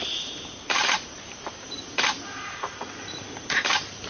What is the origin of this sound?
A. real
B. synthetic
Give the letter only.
B